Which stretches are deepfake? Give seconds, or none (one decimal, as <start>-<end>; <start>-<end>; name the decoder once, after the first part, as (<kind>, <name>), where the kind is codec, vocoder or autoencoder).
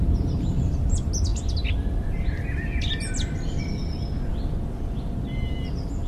none